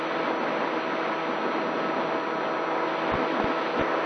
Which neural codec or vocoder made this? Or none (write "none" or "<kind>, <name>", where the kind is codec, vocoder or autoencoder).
none